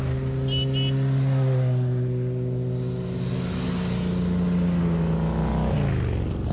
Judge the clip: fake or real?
real